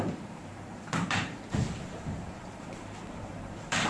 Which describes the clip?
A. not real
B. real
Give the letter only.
A